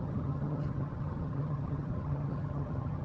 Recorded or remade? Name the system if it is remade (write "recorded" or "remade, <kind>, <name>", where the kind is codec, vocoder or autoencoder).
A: remade, vocoder, HiFi-GAN